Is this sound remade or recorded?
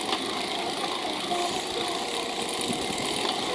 recorded